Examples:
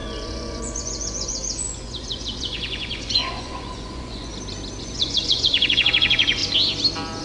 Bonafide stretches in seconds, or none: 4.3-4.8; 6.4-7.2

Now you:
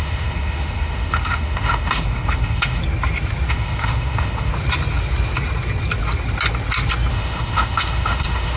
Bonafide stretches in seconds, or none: 2.8-3.5; 4.5-7.1

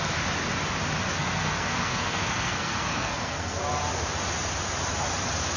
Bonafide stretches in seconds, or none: 0.0-1.1; 3.6-5.6

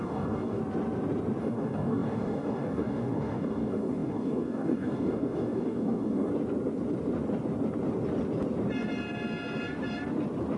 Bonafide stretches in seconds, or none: 0.6-1.4; 6.3-10.6

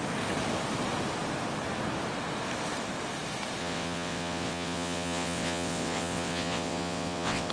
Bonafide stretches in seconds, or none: 0.0-3.6

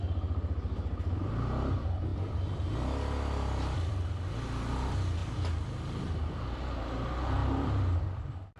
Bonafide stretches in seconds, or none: 0.0-8.6

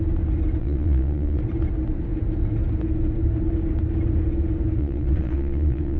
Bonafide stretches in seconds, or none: 0.0-0.6; 1.4-4.8